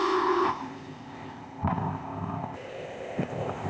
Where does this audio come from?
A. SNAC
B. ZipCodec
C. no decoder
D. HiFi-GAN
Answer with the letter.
B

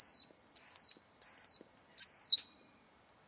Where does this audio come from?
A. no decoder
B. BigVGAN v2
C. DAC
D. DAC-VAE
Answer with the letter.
A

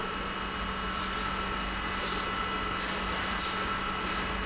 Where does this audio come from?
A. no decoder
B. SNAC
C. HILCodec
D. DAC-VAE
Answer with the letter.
A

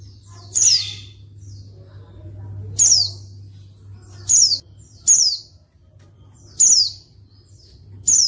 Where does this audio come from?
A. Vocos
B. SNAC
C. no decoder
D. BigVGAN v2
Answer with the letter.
C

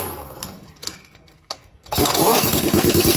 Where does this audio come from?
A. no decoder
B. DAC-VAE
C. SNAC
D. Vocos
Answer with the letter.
C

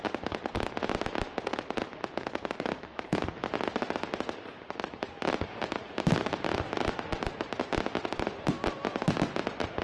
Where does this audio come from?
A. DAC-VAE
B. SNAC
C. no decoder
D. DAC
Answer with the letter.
C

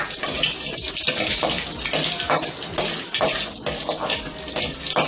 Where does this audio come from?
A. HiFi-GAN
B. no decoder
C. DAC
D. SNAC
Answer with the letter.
B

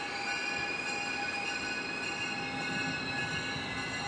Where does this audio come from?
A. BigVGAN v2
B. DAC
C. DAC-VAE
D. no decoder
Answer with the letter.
D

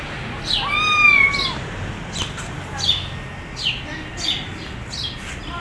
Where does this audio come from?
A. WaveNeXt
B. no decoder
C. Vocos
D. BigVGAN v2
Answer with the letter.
B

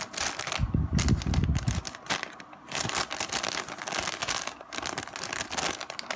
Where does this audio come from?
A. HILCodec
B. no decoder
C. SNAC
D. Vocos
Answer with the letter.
B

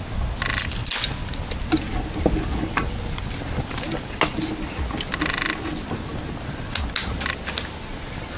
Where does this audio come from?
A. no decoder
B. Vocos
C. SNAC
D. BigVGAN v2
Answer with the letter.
A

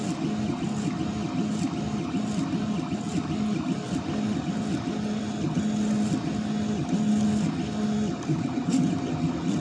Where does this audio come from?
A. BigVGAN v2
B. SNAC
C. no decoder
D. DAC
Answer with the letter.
C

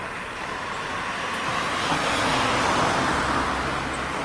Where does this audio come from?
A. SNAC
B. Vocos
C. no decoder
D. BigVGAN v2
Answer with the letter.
C